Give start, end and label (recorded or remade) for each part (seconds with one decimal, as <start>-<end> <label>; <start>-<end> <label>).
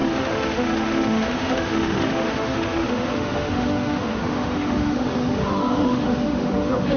0.0-7.0 remade